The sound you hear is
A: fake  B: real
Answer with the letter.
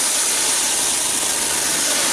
B